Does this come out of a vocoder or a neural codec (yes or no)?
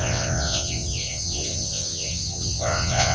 yes